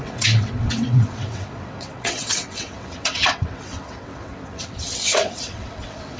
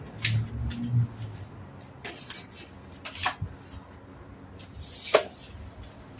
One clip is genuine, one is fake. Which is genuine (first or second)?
second